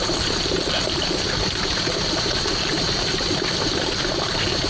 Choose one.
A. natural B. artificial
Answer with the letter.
B